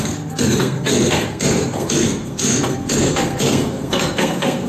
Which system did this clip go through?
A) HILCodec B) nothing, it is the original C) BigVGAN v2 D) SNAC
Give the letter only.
D